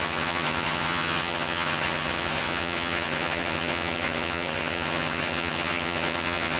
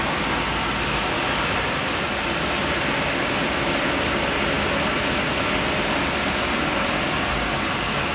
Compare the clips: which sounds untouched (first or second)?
second